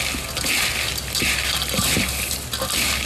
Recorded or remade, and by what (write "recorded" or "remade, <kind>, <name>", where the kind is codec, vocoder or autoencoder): recorded